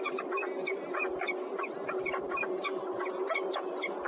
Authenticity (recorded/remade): recorded